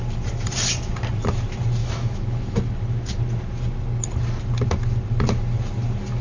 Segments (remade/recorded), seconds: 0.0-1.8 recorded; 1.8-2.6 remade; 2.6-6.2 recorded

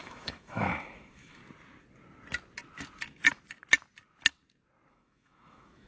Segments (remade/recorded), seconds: 0.0-1.4 remade; 1.4-4.9 recorded; 4.9-5.9 remade

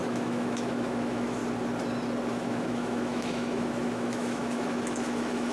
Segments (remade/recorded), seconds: 0.0-1.4 remade; 1.4-2.3 recorded; 2.3-5.5 remade

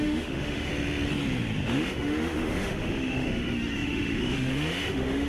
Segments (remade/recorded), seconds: 0.0-0.7 remade; 0.7-1.7 recorded; 1.7-5.3 remade

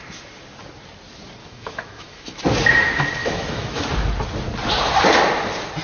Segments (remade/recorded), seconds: 0.0-1.4 recorded; 1.4-2.4 remade; 2.4-3.2 recorded; 3.2-3.9 remade; 3.9-5.8 recorded

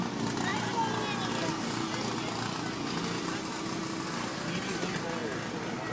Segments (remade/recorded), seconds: 0.0-5.9 recorded